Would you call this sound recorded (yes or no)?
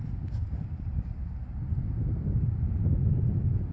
yes